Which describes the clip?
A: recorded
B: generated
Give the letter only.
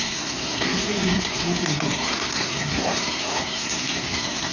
B